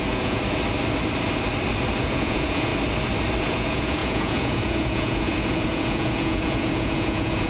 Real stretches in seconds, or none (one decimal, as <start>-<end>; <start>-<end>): 0.4-2.0; 2.7-3.4